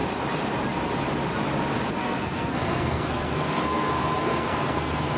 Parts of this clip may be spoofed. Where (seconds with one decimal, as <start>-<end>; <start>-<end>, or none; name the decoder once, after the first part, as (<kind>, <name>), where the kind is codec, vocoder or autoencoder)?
2.0-5.2 (codec, SNAC)